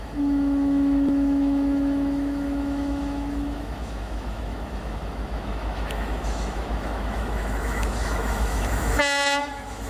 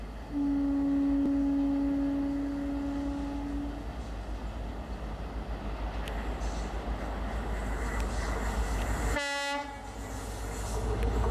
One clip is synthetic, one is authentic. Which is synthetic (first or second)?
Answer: first